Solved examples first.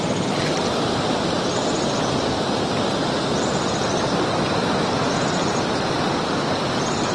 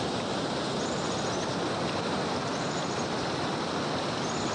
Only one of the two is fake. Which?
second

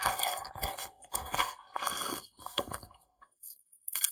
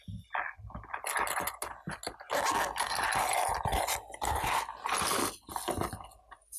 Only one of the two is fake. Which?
first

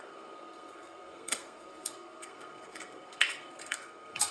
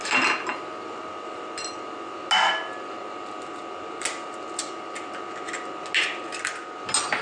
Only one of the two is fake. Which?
first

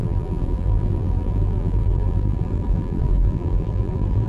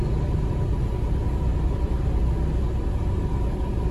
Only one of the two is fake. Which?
first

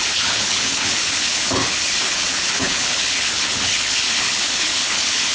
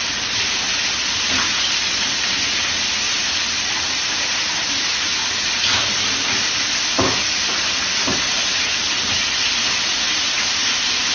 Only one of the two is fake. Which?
first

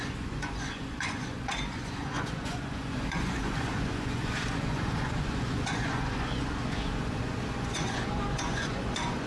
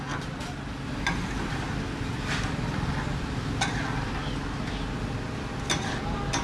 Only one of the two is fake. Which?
first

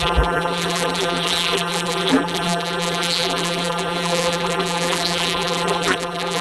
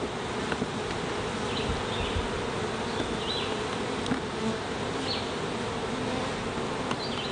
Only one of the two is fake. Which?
first